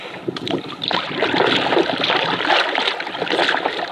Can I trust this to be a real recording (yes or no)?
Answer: yes